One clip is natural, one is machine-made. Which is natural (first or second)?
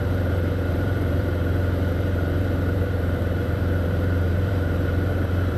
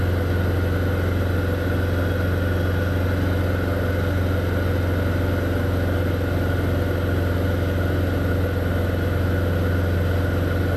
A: second